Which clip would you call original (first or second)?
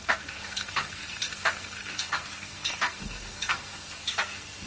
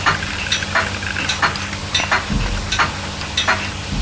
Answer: second